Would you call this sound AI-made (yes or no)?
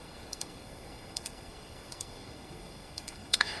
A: yes